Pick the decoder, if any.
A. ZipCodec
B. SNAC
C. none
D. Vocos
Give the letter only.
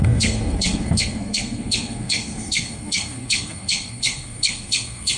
B